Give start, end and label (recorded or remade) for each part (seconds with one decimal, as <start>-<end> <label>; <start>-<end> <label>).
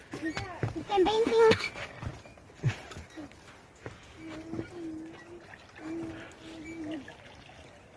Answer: 0.0-0.8 recorded; 0.8-1.7 remade; 1.7-8.0 recorded